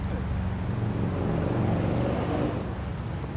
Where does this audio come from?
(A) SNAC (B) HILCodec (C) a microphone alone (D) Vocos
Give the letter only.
C